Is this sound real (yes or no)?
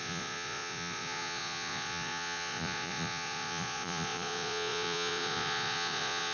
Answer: no